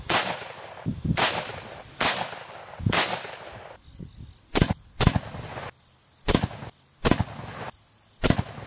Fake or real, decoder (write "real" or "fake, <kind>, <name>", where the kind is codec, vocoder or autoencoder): real